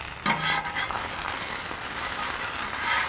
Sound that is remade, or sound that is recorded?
recorded